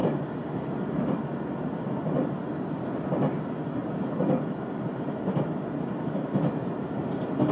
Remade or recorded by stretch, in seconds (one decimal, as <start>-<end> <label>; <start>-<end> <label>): 0.0-3.8 recorded; 3.8-6.7 remade; 6.7-7.5 recorded